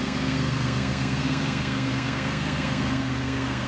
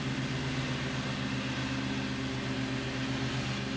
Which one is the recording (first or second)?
second